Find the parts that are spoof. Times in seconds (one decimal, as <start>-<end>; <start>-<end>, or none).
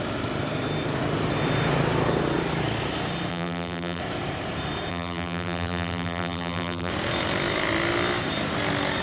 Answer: 3.3-4.0; 4.9-6.9